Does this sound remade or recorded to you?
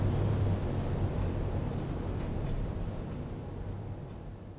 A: recorded